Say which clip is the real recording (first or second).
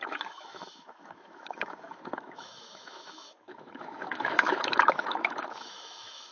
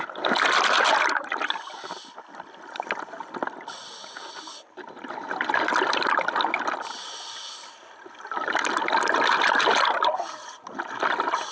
second